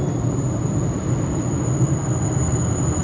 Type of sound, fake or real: real